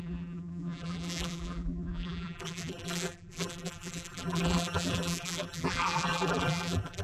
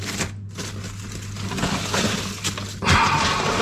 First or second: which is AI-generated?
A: first